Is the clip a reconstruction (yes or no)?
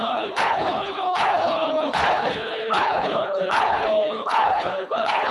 yes